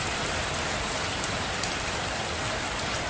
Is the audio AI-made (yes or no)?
no